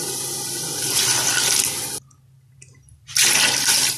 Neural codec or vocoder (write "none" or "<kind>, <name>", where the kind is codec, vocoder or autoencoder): none